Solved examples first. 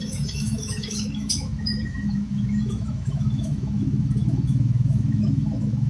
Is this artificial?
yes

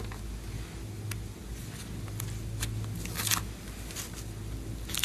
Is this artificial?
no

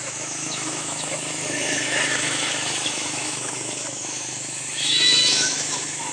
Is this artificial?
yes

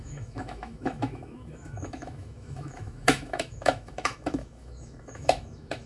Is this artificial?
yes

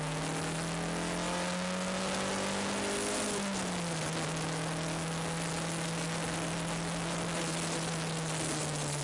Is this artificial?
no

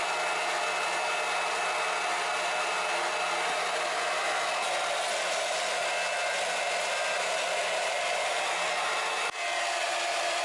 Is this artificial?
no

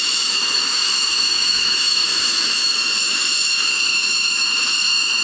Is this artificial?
yes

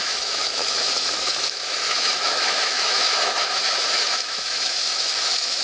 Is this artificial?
yes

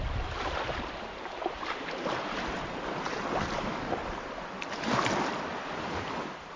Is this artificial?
no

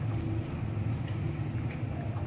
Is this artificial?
no